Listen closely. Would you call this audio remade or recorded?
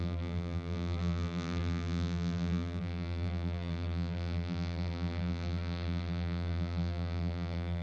remade